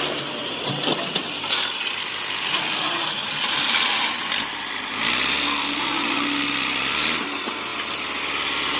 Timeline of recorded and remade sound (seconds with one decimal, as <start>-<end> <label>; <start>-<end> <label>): 0.0-0.4 remade; 0.4-4.6 recorded; 4.6-7.7 remade; 7.7-8.2 recorded; 8.2-8.8 remade